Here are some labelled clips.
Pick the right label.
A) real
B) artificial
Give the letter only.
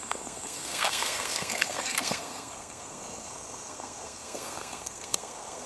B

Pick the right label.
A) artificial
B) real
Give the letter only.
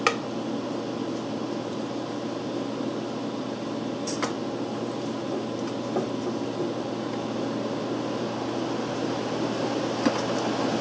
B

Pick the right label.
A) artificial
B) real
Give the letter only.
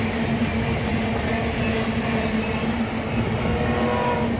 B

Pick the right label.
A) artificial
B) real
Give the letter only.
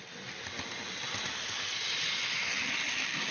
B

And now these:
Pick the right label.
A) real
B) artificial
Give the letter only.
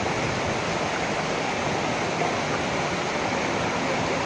A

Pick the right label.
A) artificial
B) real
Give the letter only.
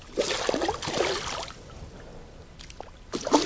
B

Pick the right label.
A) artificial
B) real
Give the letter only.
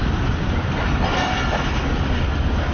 B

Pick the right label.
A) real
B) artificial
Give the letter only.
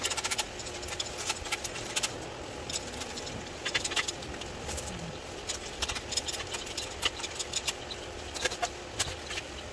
B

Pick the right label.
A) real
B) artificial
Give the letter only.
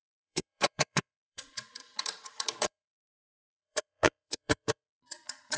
B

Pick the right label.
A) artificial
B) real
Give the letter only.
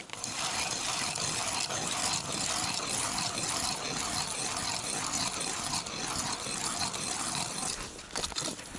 B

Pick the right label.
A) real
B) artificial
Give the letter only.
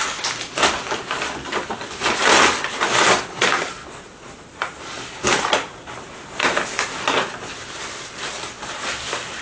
A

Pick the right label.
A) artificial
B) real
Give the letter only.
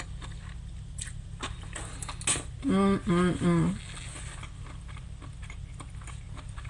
B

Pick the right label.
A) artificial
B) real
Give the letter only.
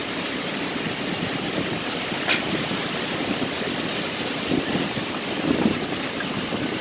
B